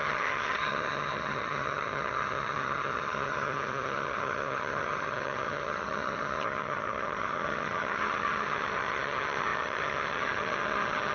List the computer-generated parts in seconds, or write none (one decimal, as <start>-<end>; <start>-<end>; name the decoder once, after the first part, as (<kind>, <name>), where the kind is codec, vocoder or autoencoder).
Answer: 0.0-11.1 (vocoder, HiFi-GAN)